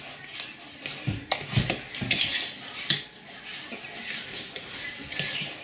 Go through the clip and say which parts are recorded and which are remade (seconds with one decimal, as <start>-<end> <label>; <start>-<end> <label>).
0.0-5.6 recorded